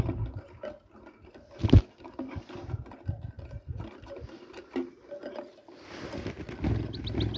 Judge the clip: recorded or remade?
recorded